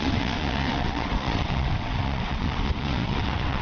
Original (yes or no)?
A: no